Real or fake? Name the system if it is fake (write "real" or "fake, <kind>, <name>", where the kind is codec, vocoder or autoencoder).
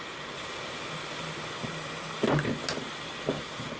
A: real